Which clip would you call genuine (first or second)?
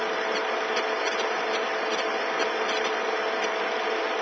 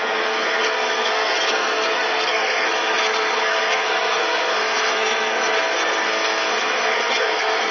first